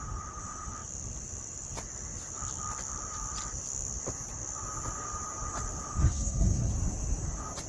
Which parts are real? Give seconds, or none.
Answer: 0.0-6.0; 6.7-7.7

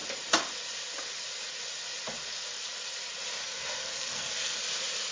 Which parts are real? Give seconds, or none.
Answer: 0.0-3.4; 4.6-5.1

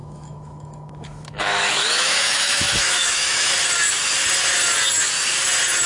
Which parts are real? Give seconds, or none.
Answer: 3.5-5.9

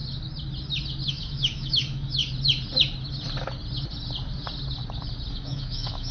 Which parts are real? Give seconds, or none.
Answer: 0.0-1.1; 2.2-5.3

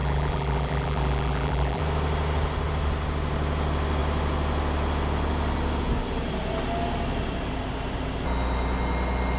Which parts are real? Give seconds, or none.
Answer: 1.8-9.4

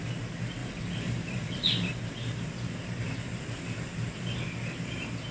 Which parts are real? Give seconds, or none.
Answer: 0.0-0.6; 2.0-5.3